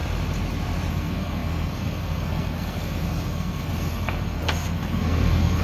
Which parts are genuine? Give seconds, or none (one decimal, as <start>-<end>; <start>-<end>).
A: 0.0-0.9